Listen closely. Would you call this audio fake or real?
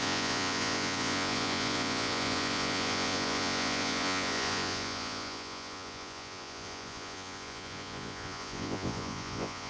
fake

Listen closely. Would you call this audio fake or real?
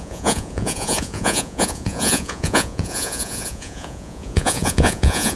fake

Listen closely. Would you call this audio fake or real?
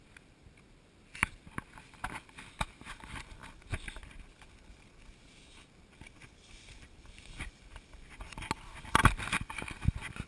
real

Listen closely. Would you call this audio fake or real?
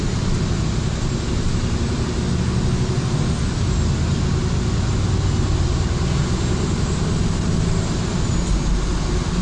real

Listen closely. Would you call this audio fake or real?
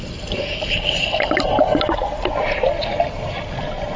real